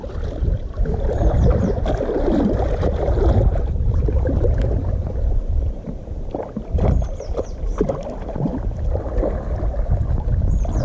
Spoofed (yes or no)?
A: yes